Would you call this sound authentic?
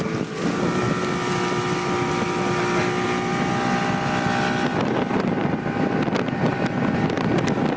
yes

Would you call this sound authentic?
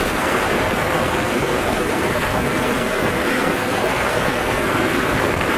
no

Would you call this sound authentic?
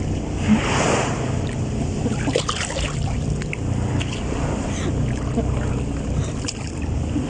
yes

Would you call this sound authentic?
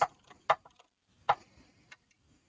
yes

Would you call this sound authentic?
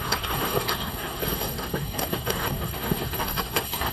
no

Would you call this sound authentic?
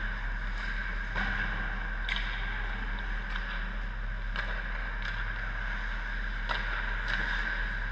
yes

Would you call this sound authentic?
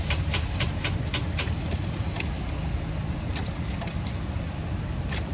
yes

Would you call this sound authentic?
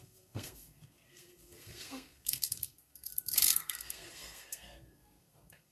no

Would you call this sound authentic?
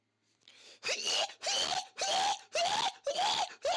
yes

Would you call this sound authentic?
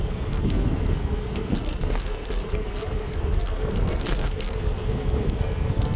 no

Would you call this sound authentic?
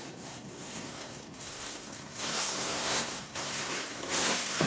no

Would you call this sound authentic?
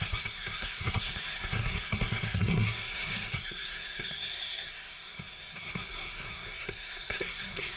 no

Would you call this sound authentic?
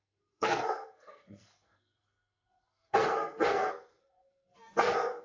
no